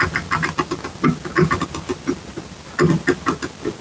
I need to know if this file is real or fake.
real